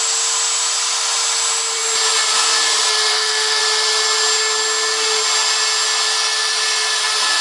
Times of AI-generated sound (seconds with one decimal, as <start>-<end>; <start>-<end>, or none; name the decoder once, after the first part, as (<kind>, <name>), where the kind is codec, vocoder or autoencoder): 3.1-3.6 (codec, SNAC)